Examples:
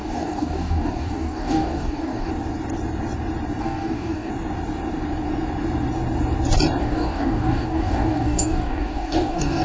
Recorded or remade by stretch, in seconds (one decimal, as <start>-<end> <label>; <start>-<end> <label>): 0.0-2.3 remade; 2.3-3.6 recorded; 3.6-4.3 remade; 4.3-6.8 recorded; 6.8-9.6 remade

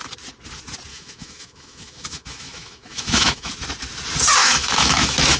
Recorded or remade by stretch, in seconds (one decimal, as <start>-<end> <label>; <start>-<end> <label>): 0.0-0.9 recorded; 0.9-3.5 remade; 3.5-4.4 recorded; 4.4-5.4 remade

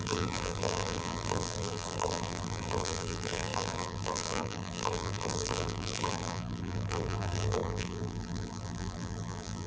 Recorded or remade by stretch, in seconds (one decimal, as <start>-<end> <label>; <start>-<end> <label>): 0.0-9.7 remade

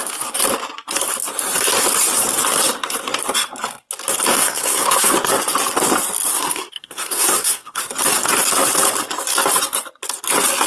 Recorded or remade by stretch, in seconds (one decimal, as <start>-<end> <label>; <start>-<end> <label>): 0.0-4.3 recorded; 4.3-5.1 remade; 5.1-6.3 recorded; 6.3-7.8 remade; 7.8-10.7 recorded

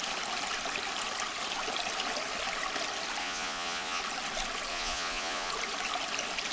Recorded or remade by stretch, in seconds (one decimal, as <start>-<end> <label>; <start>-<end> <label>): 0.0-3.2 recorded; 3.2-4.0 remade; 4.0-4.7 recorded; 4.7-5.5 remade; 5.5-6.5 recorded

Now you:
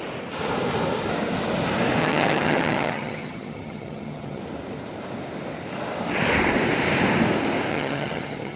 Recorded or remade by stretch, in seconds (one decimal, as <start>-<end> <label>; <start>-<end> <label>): 0.0-2.0 recorded; 2.0-4.4 remade; 4.4-7.7 recorded; 7.7-8.6 remade